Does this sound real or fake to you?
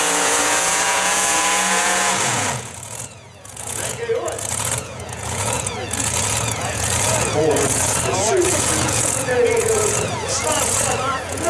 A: fake